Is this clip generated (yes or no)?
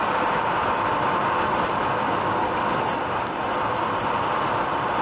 no